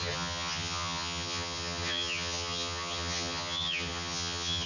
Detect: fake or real fake